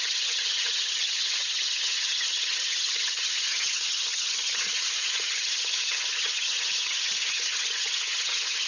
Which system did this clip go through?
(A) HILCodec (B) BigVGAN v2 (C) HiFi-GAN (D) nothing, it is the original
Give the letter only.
C